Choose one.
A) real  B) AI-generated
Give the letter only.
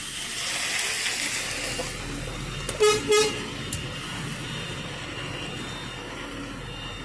A